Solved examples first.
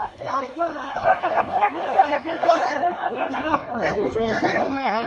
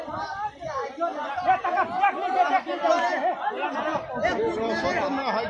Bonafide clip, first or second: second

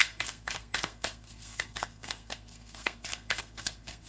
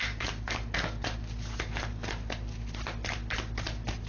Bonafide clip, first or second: second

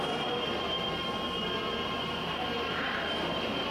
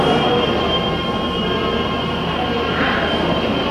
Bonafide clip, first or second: second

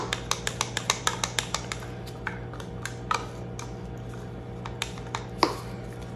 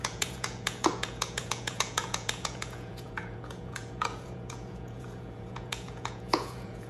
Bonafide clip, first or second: first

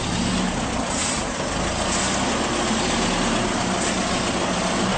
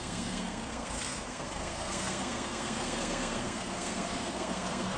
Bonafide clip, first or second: first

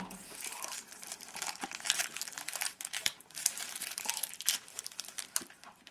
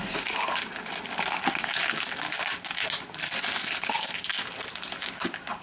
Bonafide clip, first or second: second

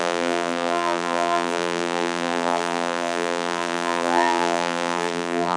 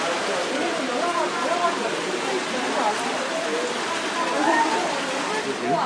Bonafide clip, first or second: second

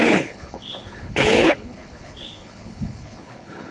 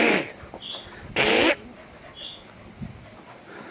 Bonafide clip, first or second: second